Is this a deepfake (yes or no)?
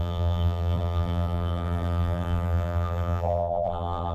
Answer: yes